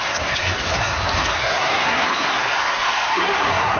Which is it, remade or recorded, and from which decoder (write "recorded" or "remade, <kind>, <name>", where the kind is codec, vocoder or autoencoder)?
remade, codec, SNAC